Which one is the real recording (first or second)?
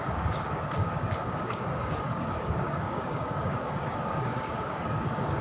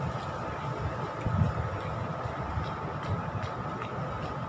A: second